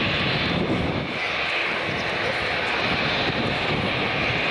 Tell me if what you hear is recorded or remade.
recorded